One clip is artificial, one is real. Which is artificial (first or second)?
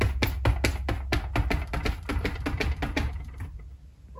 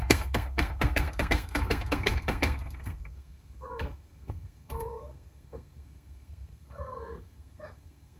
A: second